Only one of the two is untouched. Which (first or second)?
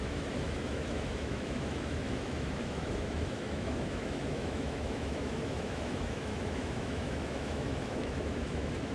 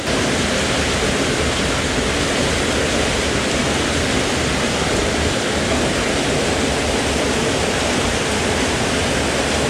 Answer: second